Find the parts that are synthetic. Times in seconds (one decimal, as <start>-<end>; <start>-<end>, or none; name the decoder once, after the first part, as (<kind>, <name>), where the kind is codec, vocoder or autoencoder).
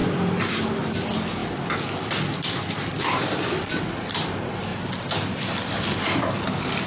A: none